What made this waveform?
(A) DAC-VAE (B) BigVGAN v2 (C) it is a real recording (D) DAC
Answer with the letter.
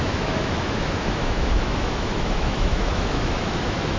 A